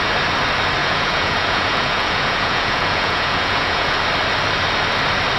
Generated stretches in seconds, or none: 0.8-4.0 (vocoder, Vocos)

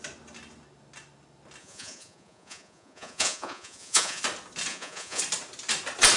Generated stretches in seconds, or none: 1.6-4.2 (vocoder, Vocos); 4.7-5.2

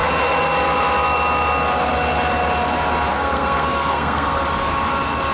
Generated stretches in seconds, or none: 3.1-4.4 (codec, SNAC)

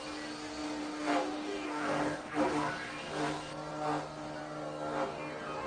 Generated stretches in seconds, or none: 0.8-2.3 (codec, DAC)

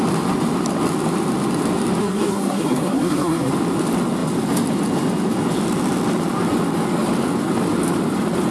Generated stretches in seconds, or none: 2.0-3.5 (codec, SNAC)

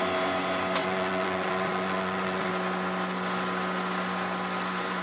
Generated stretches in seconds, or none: 0.8-2.5 (vocoder, Vocos)